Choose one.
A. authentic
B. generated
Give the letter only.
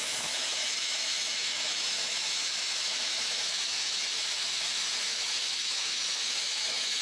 B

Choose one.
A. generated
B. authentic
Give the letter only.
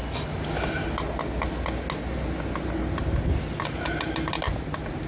B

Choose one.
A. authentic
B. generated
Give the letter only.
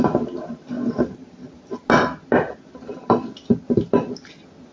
A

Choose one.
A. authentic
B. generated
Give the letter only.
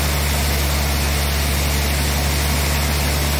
A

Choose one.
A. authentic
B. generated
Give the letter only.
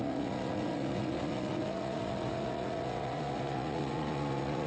B